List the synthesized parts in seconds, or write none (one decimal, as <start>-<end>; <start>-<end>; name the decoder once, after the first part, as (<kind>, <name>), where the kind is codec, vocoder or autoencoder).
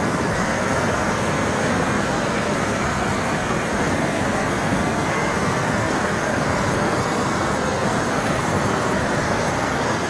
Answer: 0.0-10.1 (codec, SNAC)